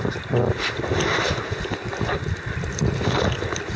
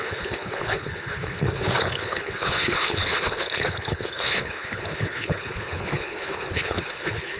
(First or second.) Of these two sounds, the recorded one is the first